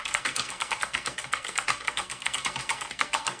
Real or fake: fake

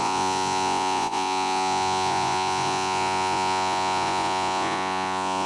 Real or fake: fake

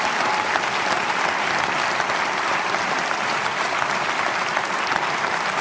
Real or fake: real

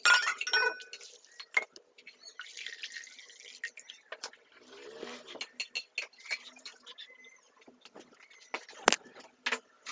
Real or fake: real